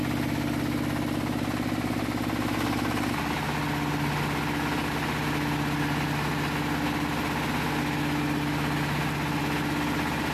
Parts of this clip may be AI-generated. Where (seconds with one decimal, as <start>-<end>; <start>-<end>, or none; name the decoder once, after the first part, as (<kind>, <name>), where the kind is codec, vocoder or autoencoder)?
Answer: none